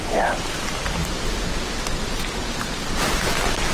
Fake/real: fake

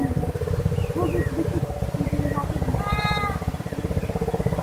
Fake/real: fake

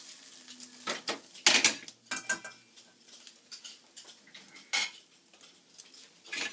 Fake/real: real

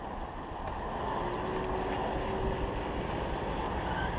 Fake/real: real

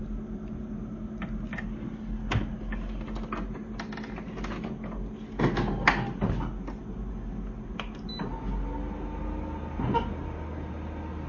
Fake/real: real